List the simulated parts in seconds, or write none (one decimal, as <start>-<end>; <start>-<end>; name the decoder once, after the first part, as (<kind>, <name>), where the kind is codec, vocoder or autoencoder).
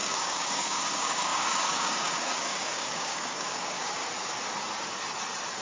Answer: 0.0-4.0 (codec, DAC)